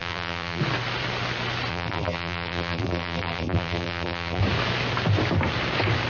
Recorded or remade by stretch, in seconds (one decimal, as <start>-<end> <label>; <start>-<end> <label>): 0.0-0.6 remade; 0.6-1.7 recorded; 1.7-4.4 remade; 4.4-6.1 recorded